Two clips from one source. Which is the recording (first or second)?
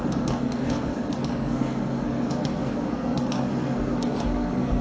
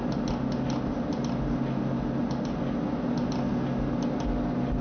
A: second